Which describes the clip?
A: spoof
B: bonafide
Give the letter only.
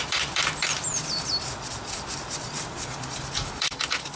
A